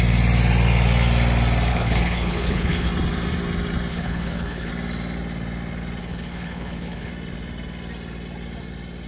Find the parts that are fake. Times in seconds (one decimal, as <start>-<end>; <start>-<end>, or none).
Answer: 1.7-2.9; 3.9-4.7; 6.0-7.1